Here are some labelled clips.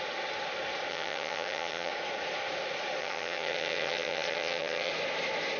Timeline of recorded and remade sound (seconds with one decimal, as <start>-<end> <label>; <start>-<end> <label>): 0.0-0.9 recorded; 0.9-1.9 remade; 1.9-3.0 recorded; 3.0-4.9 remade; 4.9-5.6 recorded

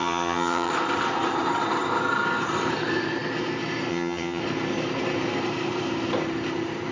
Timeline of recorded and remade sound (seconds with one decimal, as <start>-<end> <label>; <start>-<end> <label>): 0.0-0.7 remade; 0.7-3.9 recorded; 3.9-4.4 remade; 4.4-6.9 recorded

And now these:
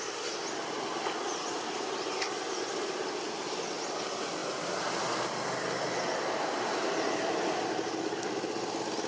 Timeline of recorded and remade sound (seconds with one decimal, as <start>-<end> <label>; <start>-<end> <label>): 0.0-9.1 recorded

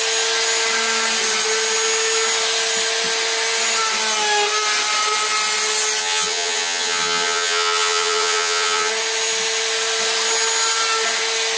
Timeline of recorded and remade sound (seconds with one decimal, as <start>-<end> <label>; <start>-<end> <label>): 0.0-6.0 recorded; 6.0-8.9 remade; 8.9-11.6 recorded